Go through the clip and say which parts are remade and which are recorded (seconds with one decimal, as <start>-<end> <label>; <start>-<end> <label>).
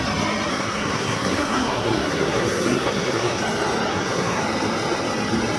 0.0-0.5 recorded; 0.5-3.4 remade; 3.4-3.9 recorded; 3.9-4.4 remade; 4.4-5.6 recorded